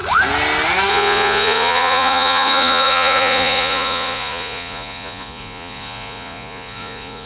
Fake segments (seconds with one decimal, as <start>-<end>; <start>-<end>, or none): 0.9-7.3